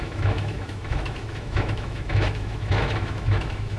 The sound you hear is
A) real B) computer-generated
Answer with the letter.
B